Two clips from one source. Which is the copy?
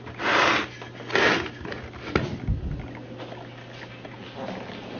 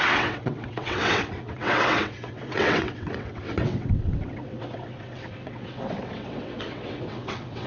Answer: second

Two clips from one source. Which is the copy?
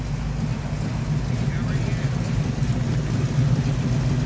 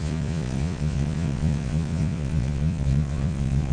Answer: second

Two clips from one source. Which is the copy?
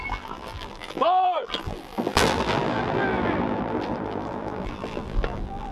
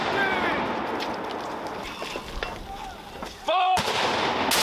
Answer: first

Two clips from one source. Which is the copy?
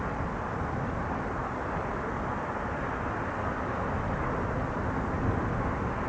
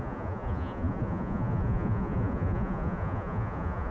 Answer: second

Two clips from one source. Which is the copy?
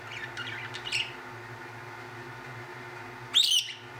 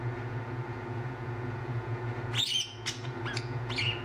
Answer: second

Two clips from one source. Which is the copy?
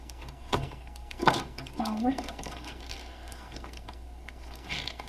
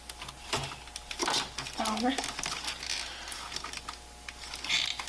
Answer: first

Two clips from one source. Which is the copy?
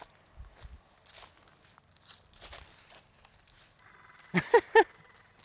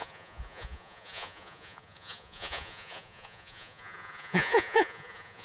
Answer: second